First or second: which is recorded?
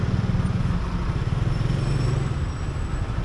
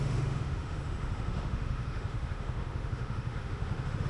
first